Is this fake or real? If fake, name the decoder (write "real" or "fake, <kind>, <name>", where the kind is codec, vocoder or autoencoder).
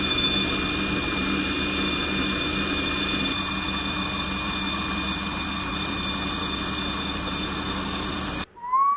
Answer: real